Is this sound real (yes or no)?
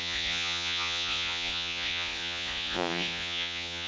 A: no